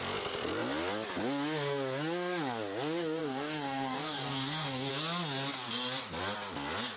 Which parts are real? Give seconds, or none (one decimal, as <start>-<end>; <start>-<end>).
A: 0.0-3.2; 4.9-7.0